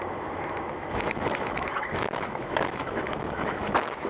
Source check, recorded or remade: remade